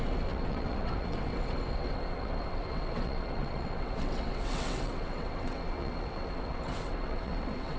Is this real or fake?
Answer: fake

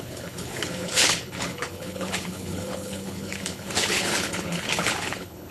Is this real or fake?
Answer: fake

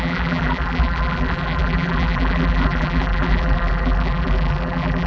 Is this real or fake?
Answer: fake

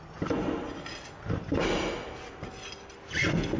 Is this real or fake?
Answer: real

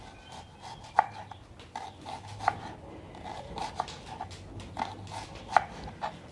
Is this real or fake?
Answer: real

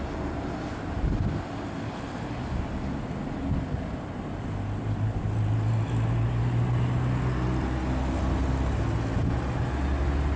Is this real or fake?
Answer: real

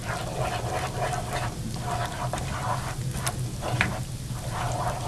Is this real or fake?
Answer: real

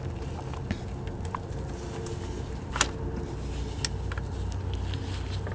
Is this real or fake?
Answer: real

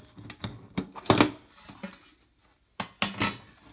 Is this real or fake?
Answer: real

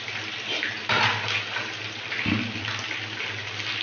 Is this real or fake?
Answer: real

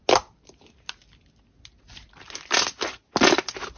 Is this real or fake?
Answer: real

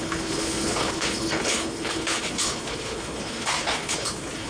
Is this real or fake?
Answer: fake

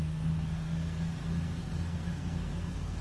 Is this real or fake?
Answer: fake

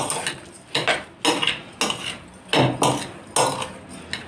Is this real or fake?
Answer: real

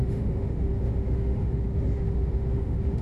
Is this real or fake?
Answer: fake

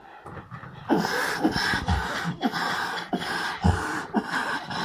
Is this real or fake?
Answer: real